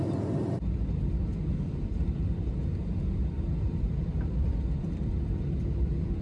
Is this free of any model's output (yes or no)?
no